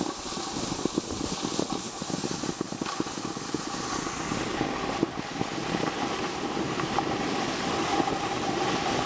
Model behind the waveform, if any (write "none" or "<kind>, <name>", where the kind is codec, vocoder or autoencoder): none